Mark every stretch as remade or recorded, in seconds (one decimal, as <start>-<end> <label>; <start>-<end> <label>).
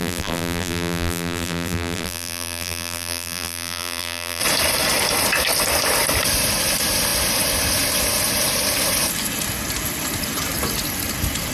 0.0-4.4 remade; 4.4-11.5 recorded